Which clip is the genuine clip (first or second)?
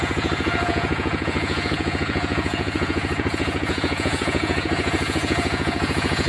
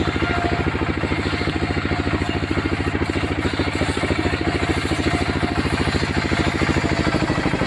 second